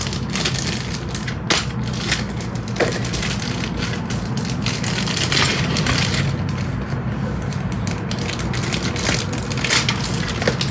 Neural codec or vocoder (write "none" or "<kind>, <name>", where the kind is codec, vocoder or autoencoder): none